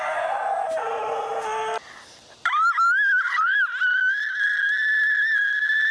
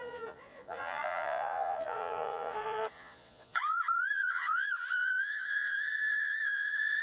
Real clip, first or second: first